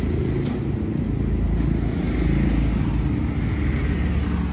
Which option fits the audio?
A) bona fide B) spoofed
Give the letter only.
A